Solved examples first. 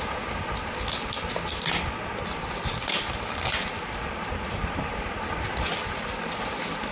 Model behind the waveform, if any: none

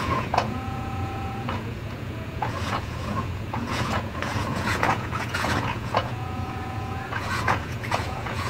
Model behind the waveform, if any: vocoder, Vocos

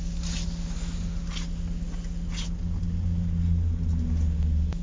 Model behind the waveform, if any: none